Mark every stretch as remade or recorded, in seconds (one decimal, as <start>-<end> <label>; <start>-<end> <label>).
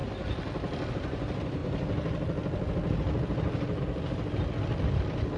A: 0.0-5.4 recorded